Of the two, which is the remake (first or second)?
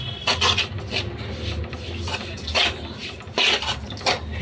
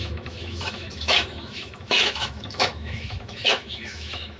second